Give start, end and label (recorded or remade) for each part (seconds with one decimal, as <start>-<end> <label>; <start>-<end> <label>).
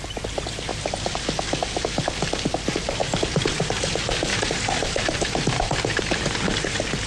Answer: 0.0-3.0 recorded; 3.0-3.9 remade; 3.9-4.3 recorded; 4.3-6.0 remade; 6.0-7.1 recorded